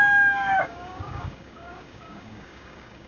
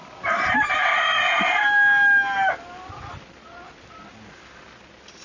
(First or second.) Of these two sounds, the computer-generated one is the first